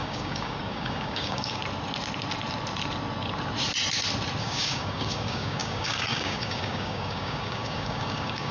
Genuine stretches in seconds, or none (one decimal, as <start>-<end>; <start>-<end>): 1.6-4.4